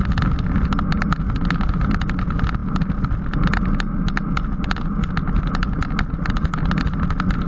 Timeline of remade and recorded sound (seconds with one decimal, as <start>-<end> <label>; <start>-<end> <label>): 0.0-7.5 recorded